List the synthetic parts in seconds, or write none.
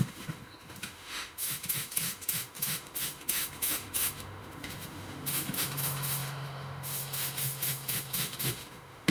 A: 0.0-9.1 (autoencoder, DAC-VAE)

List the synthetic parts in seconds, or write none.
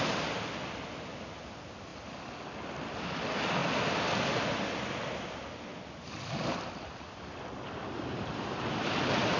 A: 1.9-2.5 (vocoder, BigVGAN v2); 5.7-9.4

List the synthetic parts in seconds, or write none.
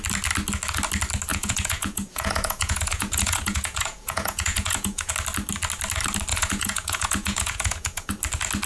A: 1.3-5.1 (vocoder, Vocos); 6.3-8.1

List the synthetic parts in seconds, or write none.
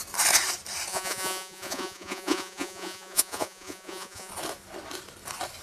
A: 0.9-4.3 (vocoder, Vocos)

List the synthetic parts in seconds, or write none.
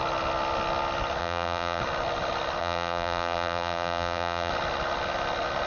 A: 1.2-1.8 (vocoder, BigVGAN v2); 2.6-4.5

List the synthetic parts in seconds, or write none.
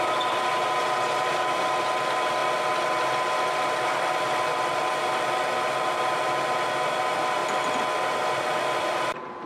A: 0.0-2.4 (vocoder, BigVGAN v2); 3.5-7.4; 8.6-9.5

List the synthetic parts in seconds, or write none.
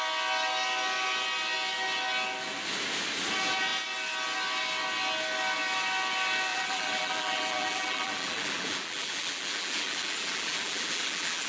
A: 6.5-11.5 (vocoder, BigVGAN v2)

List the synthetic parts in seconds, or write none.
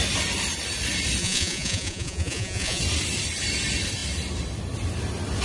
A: 1.2-2.8 (vocoder, Vocos)